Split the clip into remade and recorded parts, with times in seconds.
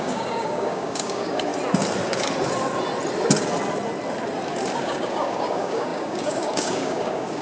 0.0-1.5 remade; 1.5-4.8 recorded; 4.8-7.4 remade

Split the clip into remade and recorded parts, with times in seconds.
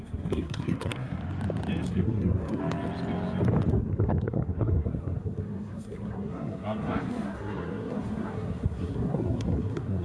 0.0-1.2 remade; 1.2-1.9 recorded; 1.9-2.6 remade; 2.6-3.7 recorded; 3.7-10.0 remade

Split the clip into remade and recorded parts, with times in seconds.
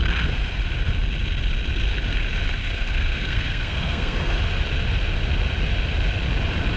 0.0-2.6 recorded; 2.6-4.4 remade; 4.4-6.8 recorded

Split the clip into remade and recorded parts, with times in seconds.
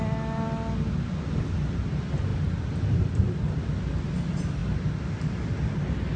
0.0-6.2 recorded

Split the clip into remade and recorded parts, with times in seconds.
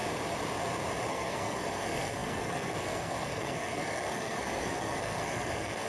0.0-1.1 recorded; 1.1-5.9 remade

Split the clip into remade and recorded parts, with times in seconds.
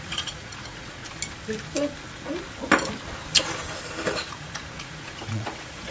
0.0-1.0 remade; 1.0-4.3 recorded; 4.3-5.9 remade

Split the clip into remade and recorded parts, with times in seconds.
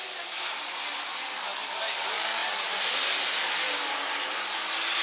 0.0-5.0 recorded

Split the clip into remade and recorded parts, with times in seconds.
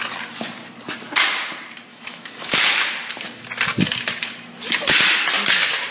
0.0-1.9 recorded; 1.9-2.5 remade; 2.5-5.9 recorded